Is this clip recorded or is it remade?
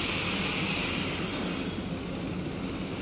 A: recorded